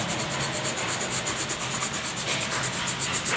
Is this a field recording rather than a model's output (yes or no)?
yes